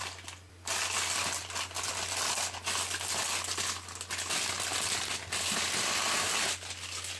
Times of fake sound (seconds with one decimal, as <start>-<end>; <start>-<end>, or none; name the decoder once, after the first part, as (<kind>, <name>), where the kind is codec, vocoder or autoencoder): none